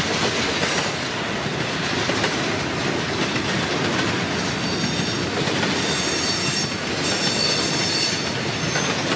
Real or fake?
real